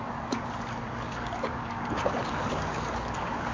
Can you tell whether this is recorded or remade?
remade